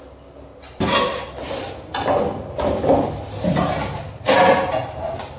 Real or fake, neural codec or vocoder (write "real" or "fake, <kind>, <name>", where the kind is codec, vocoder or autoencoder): real